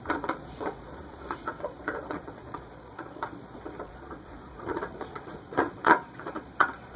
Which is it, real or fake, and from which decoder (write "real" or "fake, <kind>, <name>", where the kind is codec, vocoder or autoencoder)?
fake, vocoder, Vocos